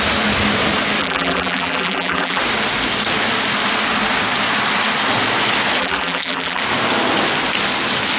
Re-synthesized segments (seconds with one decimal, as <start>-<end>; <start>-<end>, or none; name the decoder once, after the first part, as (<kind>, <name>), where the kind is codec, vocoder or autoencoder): 1.0-2.4 (vocoder, BigVGAN v2); 5.8-6.6